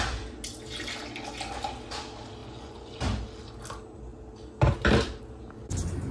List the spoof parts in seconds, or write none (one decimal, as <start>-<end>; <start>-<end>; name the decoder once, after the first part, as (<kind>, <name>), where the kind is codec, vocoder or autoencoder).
2.4-3.0 (vocoder, Vocos)